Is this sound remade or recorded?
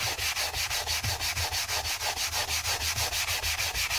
recorded